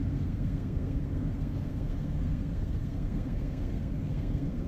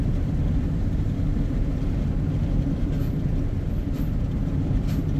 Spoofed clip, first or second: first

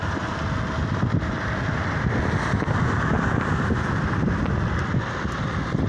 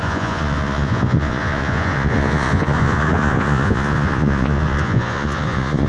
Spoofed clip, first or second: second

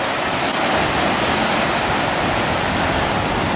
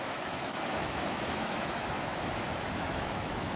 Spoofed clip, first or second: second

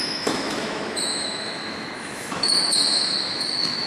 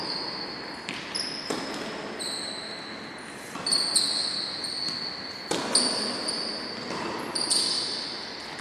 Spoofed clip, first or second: first